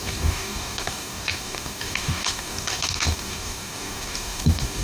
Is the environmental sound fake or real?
fake